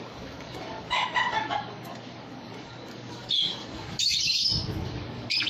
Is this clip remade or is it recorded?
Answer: remade